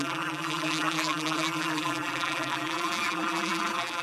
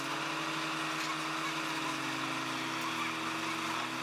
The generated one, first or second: first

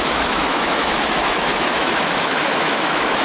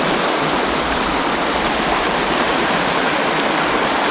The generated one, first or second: first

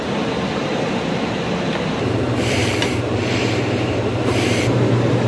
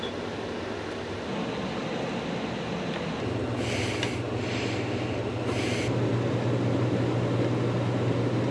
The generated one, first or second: first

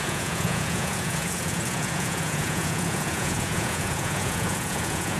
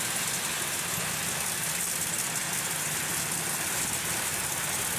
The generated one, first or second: first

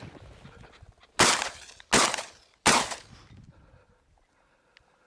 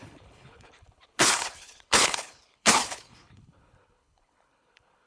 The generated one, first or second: second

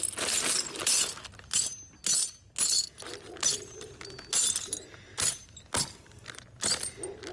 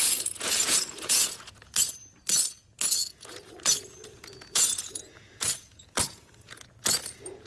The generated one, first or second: second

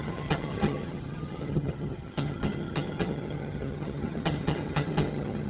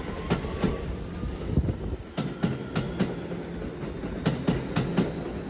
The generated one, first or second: first